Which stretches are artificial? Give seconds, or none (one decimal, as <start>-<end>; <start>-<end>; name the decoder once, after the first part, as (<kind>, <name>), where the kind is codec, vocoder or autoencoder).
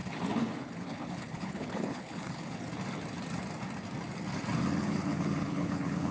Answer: 0.0-2.7 (codec, HILCodec); 4.8-6.1